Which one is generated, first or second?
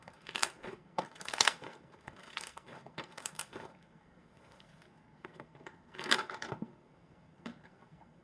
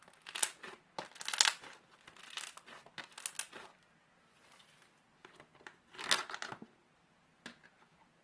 first